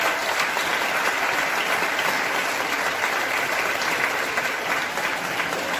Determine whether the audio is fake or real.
fake